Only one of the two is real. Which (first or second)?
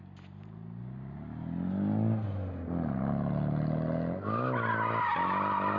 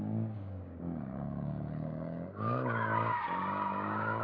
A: first